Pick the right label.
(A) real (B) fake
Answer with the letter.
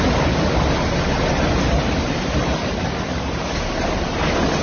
A